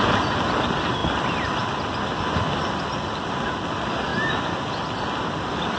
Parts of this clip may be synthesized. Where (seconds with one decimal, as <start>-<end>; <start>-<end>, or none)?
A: none